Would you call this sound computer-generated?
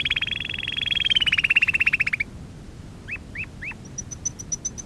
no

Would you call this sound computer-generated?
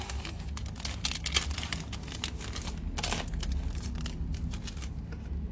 no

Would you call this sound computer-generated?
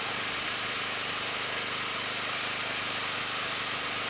no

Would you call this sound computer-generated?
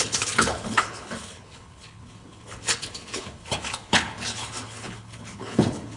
yes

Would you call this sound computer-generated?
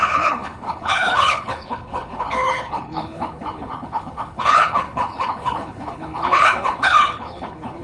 yes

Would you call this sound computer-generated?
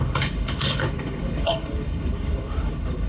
yes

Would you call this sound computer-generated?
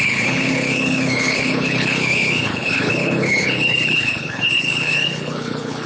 yes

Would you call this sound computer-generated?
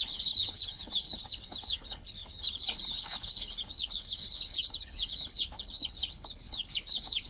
yes